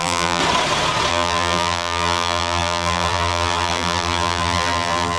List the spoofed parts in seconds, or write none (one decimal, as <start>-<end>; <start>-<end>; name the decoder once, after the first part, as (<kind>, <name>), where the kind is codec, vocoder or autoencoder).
0.0-0.4 (vocoder, BigVGAN v2); 1.1-5.2